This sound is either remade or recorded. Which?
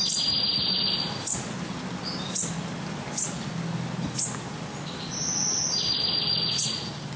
recorded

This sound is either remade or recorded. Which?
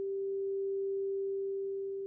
recorded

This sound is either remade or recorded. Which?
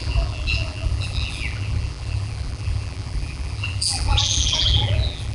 remade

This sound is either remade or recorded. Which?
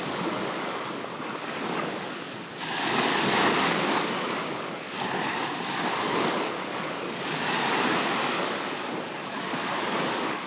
remade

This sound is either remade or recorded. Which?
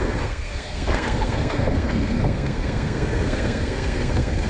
remade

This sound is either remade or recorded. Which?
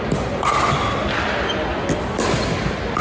recorded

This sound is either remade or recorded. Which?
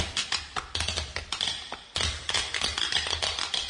recorded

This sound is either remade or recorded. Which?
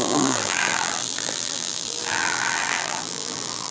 remade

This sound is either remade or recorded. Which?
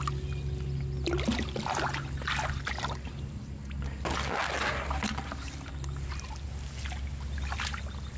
recorded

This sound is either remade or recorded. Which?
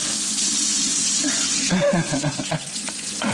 remade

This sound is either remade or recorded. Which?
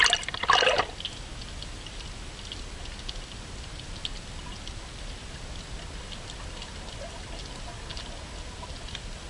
recorded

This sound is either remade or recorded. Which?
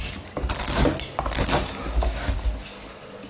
recorded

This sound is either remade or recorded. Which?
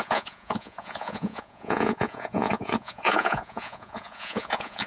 remade